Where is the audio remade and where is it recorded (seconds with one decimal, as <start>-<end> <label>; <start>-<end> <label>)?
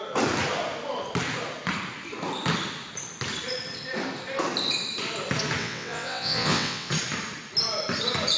0.0-5.6 recorded; 5.6-6.9 remade; 6.9-8.4 recorded